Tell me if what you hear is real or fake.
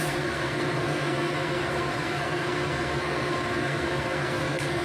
fake